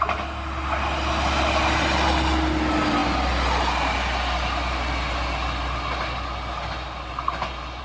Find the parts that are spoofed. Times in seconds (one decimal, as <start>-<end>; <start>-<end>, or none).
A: none